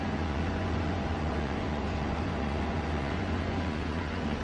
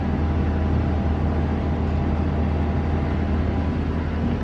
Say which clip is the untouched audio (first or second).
second